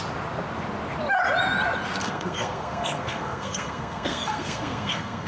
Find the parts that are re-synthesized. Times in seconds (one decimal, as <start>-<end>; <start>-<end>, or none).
2.0-5.3